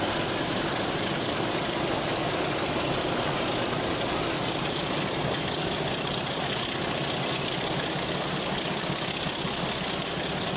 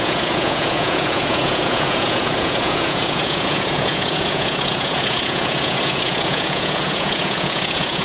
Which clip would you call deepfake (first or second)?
second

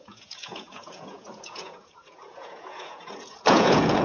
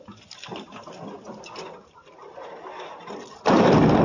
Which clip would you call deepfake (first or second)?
first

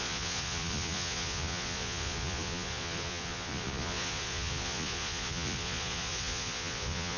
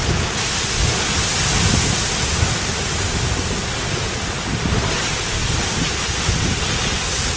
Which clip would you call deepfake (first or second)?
first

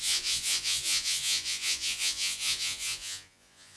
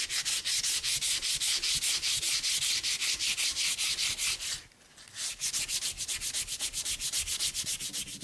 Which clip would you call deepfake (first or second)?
first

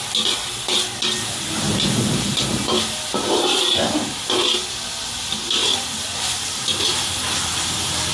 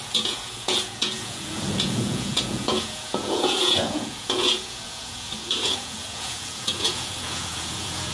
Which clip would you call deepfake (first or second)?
second